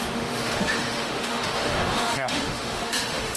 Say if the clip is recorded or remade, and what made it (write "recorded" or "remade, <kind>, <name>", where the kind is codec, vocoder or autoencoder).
remade, autoencoder, DAC-VAE